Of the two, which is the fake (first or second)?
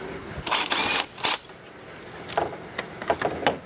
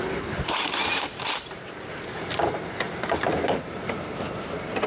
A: second